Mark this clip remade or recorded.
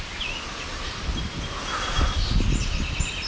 recorded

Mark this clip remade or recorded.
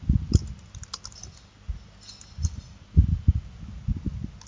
recorded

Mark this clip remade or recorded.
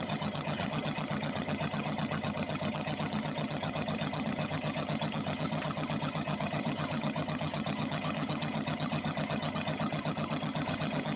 remade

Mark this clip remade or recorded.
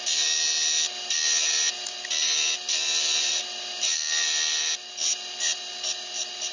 recorded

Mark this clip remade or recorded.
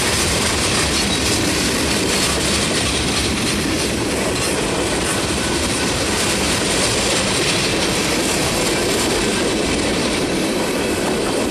remade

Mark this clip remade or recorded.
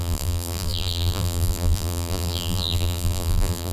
remade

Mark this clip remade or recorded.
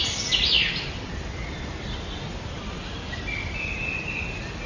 recorded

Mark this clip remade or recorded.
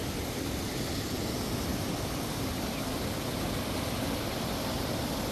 recorded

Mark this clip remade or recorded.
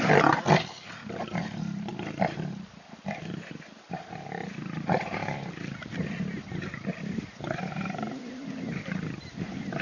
recorded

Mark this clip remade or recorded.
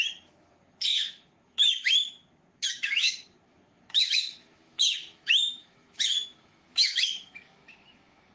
remade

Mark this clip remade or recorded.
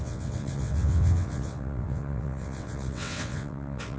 remade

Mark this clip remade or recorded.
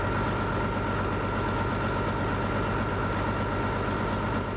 recorded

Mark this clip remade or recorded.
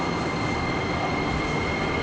recorded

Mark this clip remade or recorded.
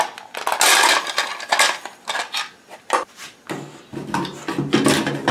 recorded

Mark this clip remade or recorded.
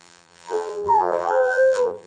remade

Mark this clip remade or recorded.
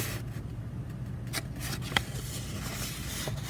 recorded